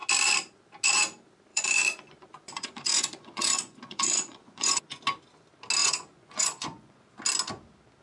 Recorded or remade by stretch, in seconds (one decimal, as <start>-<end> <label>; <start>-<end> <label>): 0.0-1.5 recorded; 1.5-5.0 remade; 5.0-5.8 recorded; 5.8-7.0 remade; 7.0-8.0 recorded